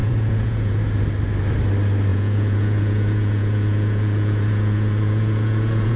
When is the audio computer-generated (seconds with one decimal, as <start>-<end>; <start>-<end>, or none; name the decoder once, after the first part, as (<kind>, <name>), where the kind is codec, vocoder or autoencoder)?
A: 0.0-0.8 (vocoder, Vocos); 2.1-6.0